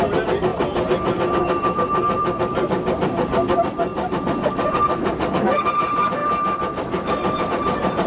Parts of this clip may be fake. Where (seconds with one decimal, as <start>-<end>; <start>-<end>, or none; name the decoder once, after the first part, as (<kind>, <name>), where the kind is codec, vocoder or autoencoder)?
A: 0.0-0.5 (vocoder, BigVGAN v2); 1.3-3.9; 5.3-6.2; 7.5-8.1